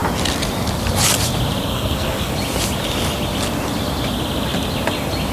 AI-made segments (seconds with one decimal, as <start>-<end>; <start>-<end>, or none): 1.7-2.3